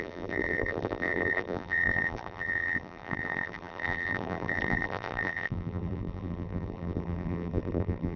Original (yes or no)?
no